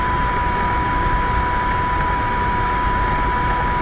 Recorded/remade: recorded